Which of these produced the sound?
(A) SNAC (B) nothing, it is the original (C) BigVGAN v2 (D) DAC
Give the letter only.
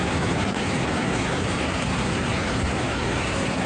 A